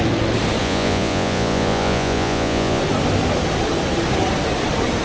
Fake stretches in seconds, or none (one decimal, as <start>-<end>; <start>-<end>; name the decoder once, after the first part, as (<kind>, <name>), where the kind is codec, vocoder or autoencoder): 0.6-2.8 (vocoder, Vocos)